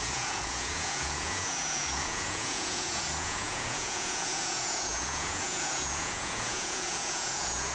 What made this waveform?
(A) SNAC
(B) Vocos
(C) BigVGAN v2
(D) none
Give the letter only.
B